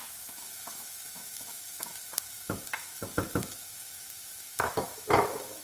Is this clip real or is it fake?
fake